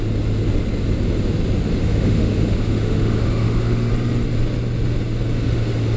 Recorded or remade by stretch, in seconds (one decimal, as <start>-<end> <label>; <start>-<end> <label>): 0.0-1.8 recorded; 1.8-3.9 remade; 3.9-6.0 recorded